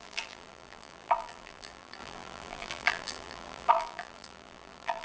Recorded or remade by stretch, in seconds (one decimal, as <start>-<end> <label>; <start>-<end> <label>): 0.0-5.0 remade